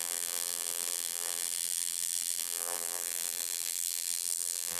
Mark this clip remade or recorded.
remade